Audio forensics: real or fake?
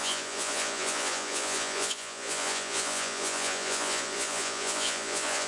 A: fake